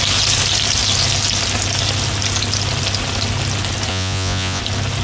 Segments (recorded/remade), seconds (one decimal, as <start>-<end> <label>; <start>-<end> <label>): 0.0-3.9 recorded; 3.9-4.6 remade; 4.6-5.0 recorded